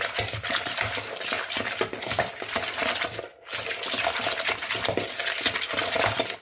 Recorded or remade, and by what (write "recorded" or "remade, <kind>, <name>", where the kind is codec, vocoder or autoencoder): recorded